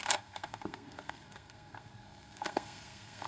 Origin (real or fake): fake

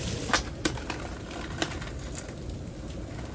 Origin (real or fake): real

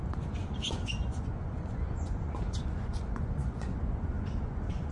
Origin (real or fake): fake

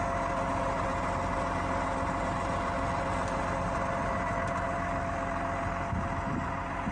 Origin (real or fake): real